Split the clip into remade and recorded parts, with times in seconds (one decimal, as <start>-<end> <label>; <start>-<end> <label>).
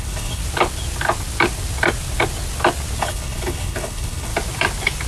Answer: 0.0-0.4 remade; 0.4-3.0 recorded; 3.0-4.3 remade; 4.3-5.1 recorded